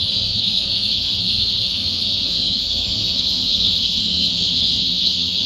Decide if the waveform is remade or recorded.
remade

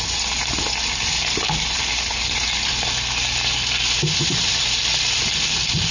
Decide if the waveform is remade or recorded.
recorded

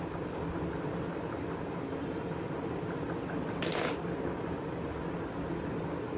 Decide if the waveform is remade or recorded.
recorded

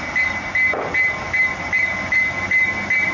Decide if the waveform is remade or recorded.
recorded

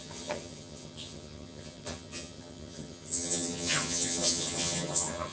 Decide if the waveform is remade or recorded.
remade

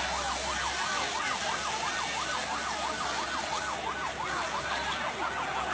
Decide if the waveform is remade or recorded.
recorded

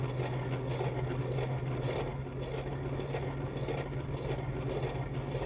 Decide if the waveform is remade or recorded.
recorded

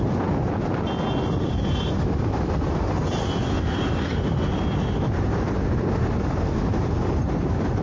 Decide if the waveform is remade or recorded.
recorded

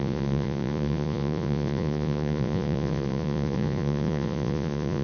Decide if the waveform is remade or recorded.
remade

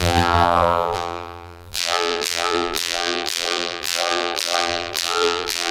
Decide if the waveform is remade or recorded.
remade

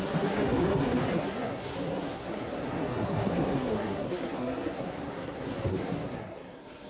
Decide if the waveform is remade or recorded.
remade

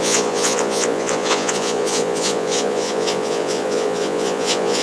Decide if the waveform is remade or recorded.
remade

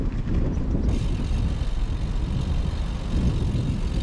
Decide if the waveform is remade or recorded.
recorded